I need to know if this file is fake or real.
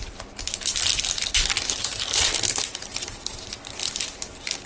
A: real